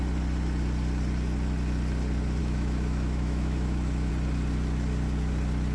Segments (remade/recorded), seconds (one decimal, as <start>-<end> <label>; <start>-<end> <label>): 0.0-2.4 recorded; 2.4-4.1 remade; 4.1-5.7 recorded